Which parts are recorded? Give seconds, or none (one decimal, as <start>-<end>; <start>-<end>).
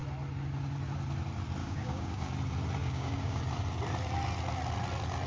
0.0-1.6; 2.3-2.8; 3.4-5.3